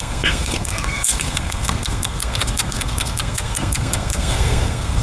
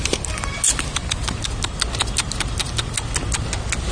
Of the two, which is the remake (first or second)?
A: first